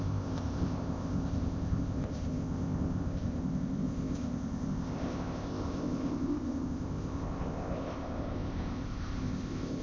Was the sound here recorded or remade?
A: remade